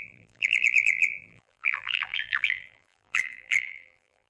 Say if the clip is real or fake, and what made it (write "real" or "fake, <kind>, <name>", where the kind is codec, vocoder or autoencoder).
fake, vocoder, BigVGAN v2